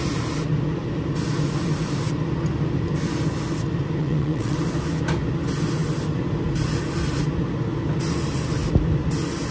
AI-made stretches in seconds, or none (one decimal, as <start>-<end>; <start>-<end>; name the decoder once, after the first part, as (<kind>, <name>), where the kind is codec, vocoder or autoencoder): 4.0-4.6 (vocoder, WaveNeXt)